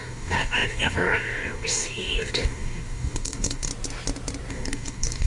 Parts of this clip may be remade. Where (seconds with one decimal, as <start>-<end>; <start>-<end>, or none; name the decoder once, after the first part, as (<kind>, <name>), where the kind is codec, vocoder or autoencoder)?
0.0-3.7 (codec, DAC); 4.5-5.3